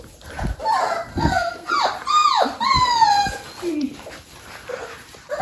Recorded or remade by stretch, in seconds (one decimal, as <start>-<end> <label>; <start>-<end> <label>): 0.0-1.1 recorded; 1.1-1.7 remade; 1.7-5.4 recorded